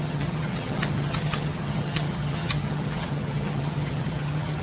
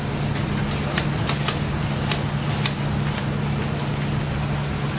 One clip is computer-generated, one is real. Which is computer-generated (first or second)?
first